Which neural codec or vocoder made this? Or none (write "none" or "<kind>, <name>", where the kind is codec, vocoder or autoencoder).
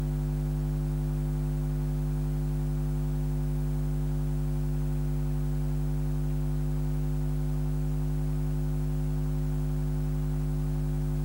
none